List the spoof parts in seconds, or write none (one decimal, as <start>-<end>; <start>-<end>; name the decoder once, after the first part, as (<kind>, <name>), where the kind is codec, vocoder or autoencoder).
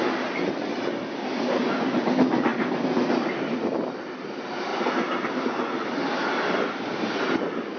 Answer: none